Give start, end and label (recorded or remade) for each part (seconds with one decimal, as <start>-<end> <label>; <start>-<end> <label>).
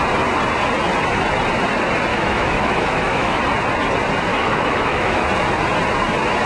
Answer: 0.0-2.1 recorded; 2.1-3.4 remade; 3.4-4.3 recorded; 4.3-5.2 remade; 5.2-6.5 recorded